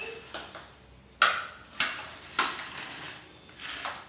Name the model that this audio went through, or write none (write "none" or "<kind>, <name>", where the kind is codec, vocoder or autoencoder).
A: none